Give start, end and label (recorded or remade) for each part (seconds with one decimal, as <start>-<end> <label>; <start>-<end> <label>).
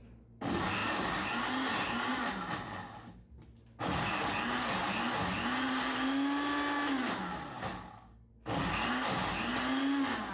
0.0-10.3 recorded